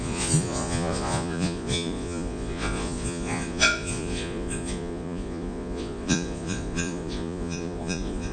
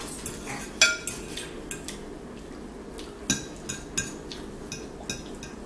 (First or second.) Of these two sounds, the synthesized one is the first